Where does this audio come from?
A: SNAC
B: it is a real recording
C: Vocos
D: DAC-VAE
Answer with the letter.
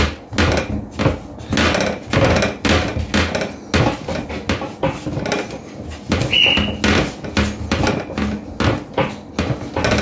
B